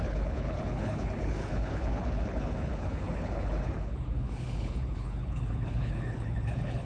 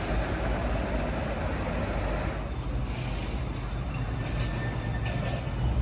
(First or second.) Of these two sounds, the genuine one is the second